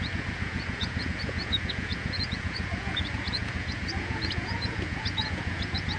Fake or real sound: fake